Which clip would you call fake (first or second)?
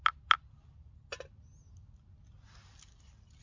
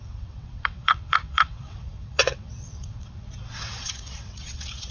second